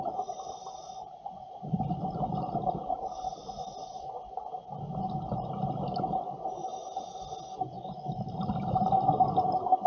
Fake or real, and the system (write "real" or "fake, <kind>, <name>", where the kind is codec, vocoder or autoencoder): real